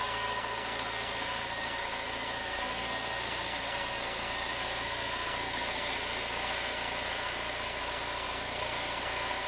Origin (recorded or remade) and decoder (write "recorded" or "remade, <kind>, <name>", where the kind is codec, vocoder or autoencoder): remade, codec, SNAC